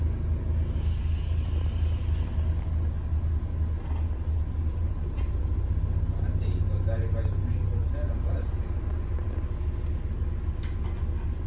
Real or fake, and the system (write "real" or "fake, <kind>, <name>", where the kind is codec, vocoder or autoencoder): real